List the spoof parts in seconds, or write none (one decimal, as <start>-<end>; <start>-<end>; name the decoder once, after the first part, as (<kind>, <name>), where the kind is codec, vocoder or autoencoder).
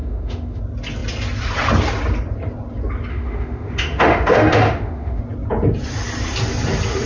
0.0-0.6 (autoencoder, DAC-VAE); 3.1-5.2